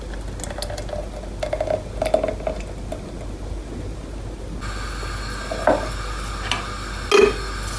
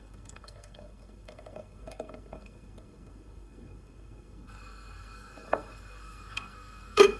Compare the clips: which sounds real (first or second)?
first